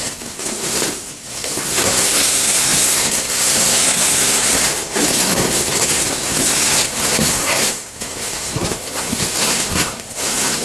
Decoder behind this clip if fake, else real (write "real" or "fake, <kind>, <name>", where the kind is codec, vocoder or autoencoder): fake, codec, SNAC